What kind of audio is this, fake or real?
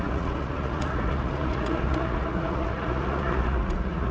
fake